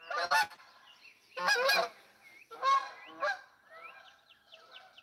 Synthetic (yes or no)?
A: no